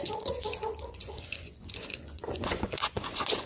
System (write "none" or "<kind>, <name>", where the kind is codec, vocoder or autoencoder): vocoder, Vocos